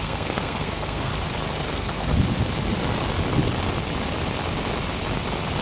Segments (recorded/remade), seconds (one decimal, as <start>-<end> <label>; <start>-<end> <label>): 0.0-1.1 remade; 1.1-1.7 recorded; 1.7-2.1 remade; 2.1-5.6 recorded